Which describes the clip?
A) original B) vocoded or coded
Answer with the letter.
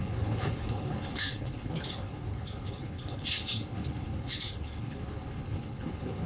B